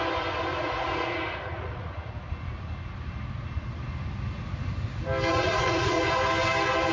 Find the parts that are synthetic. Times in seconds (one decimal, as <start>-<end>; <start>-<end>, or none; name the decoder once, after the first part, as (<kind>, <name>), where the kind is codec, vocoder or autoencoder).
0.5-2.1 (vocoder, Vocos); 5.3-6.1